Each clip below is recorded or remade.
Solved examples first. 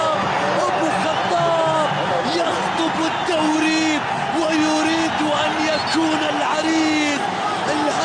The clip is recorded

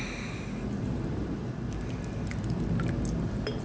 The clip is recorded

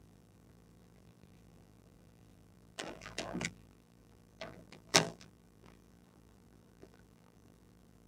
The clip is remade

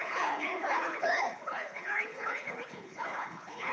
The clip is remade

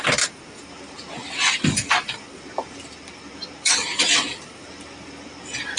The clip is remade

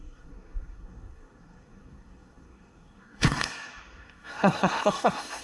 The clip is remade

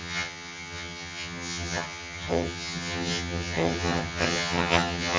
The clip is remade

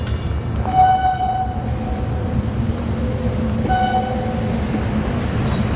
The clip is recorded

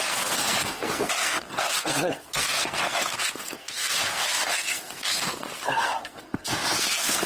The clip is remade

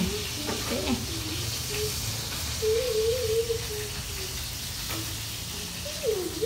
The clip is recorded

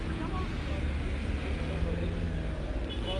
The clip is recorded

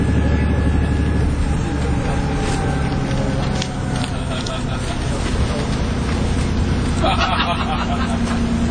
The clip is recorded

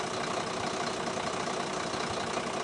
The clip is recorded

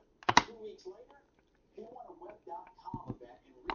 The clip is recorded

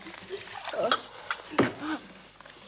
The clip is recorded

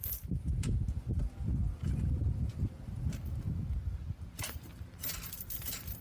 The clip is remade